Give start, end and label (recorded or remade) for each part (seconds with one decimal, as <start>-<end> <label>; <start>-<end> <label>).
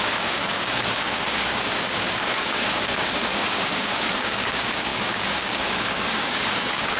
0.0-7.0 remade